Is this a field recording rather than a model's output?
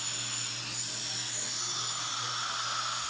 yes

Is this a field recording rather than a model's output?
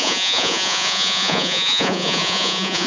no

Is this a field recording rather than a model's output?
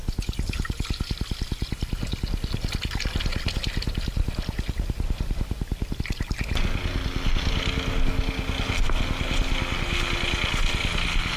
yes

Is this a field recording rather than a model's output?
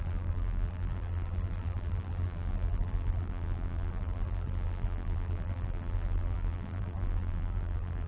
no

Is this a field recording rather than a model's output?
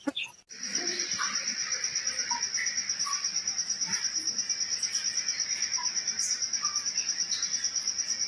yes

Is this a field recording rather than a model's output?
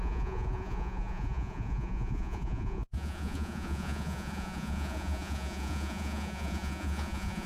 no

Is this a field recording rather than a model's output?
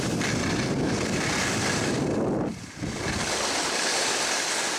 yes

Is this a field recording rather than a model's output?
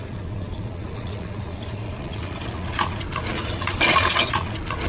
no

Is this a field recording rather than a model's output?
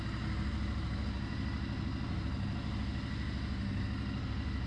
yes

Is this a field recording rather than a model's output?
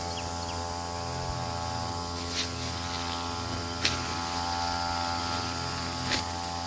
yes